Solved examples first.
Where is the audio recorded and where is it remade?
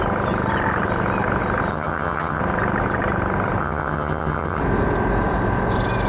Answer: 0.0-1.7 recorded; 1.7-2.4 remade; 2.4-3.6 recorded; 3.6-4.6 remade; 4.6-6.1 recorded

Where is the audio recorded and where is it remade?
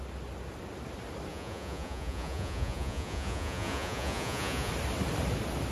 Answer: 0.0-1.3 recorded; 1.3-4.7 remade; 4.7-5.7 recorded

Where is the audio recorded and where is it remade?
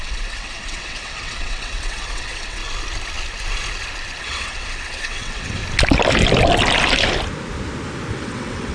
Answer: 0.0-2.6 remade; 2.6-4.2 recorded; 4.2-5.6 remade; 5.6-8.1 recorded; 8.1-8.7 remade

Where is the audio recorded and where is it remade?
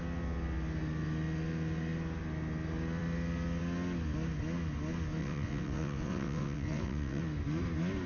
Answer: 0.0-5.2 recorded; 5.2-7.2 remade; 7.2-8.1 recorded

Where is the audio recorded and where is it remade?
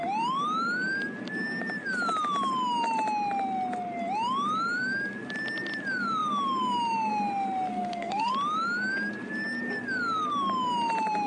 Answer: 0.0-7.7 recorded; 7.7-8.3 remade; 8.3-11.3 recorded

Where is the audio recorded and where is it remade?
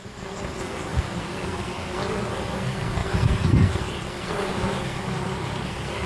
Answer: 0.0-6.1 remade